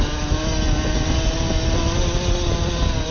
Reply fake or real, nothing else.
real